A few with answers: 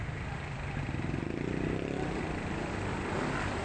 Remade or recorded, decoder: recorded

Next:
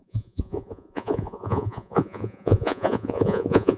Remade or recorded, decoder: remade, vocoder, Vocos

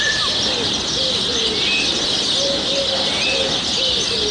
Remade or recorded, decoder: recorded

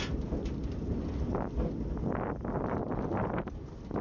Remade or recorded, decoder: recorded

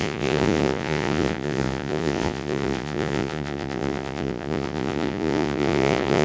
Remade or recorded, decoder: remade, vocoder, Vocos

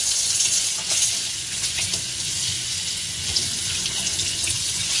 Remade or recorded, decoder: remade, vocoder, Vocos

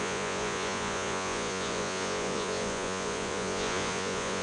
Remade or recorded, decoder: remade, vocoder, Vocos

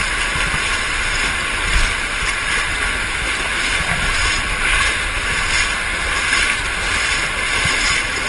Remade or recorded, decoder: recorded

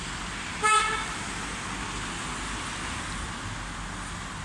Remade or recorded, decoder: recorded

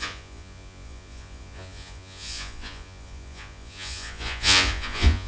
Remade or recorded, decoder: remade, vocoder, Vocos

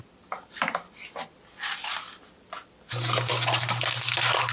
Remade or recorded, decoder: recorded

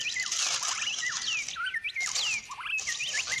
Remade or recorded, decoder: recorded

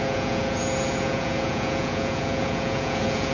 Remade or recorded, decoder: remade, vocoder, Vocos